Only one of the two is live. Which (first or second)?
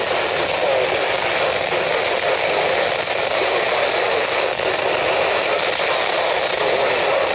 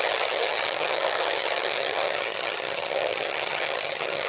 first